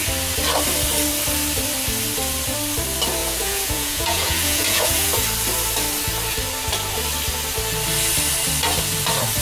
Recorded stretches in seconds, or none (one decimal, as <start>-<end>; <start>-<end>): 0.0-3.2; 5.1-9.4